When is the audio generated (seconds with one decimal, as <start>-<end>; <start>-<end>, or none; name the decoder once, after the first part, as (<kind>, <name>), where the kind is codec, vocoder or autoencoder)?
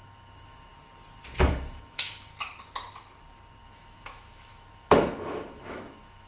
0.0-0.7 (autoencoder, DAC-VAE); 1.5-2.3; 3.6-6.3